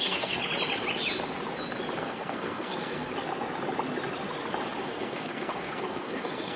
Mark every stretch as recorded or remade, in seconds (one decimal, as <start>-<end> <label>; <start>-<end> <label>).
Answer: 0.0-0.4 remade; 0.4-2.0 recorded; 2.0-3.1 remade; 3.1-4.8 recorded; 4.8-6.6 remade